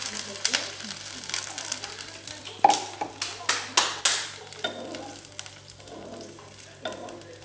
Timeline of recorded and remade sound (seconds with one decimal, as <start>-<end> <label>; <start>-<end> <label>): 0.0-7.4 recorded